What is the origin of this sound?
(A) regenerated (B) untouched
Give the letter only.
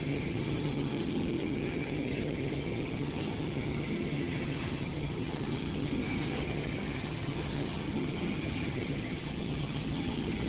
A